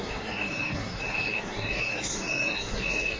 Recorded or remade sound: remade